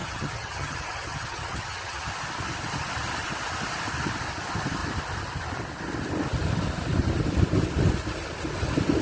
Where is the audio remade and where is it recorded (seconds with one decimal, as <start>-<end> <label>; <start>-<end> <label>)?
0.0-2.1 remade; 2.1-9.0 recorded